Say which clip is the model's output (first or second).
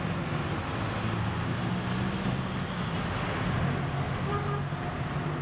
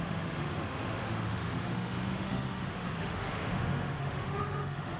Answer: second